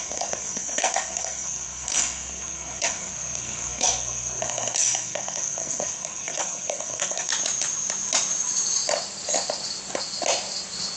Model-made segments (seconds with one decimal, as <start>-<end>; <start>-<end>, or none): 0.0-7.3

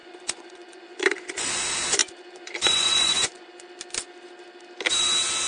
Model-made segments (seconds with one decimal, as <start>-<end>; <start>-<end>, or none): 0.0-1.4; 2.0-3.5

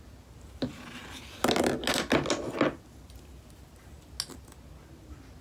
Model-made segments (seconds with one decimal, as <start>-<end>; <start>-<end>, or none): none

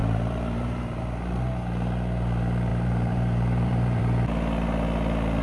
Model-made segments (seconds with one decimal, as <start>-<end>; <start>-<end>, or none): 0.0-1.0; 2.7-4.0